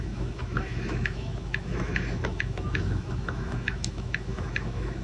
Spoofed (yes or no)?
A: yes